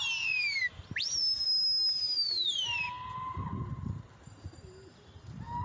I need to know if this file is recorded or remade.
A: recorded